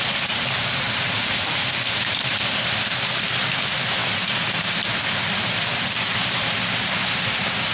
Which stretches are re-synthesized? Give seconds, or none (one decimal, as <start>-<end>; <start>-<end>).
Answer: 0.0-4.0; 5.1-7.7